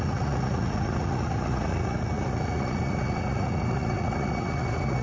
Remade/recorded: remade